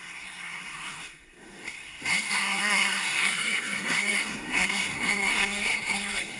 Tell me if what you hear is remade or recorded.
remade